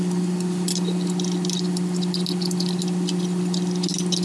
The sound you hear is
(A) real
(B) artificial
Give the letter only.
A